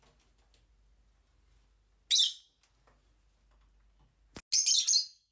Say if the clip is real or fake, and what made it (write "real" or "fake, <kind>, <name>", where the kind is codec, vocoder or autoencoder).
real